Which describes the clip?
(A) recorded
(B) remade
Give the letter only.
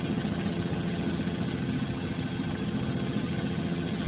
B